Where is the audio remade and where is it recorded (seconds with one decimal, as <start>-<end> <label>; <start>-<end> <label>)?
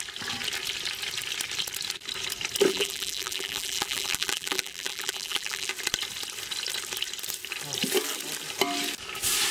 0.0-2.7 recorded; 2.7-5.7 remade; 5.7-9.5 recorded